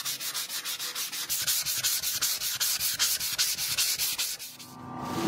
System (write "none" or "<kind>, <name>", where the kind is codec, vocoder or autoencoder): none